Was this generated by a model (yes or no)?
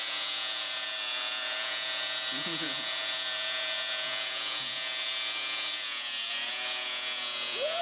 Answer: yes